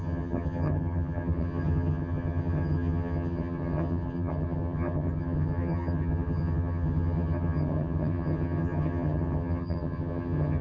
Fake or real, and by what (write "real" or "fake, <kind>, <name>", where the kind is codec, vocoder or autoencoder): fake, vocoder, HiFi-GAN